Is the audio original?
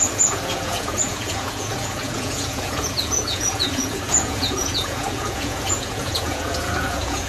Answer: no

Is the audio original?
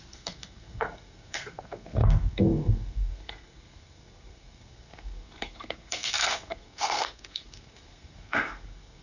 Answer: no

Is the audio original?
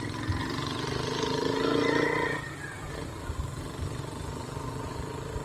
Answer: yes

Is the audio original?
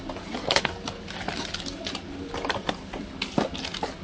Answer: yes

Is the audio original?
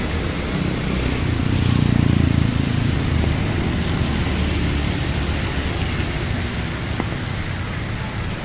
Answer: yes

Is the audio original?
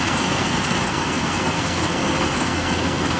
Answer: no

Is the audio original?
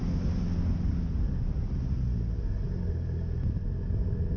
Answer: yes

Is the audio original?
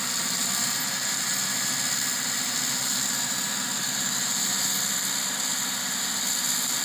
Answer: yes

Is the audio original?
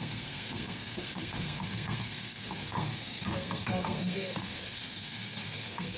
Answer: no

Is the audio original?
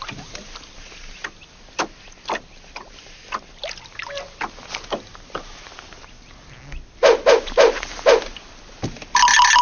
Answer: yes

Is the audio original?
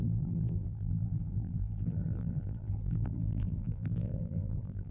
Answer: no